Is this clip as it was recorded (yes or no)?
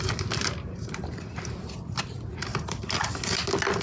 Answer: yes